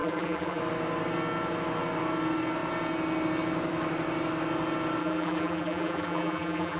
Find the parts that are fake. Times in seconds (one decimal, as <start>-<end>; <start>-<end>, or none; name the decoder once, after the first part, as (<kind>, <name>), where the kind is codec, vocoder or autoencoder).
0.0-0.6 (vocoder, BigVGAN v2); 5.0-6.8